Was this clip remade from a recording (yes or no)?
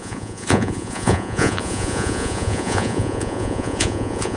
yes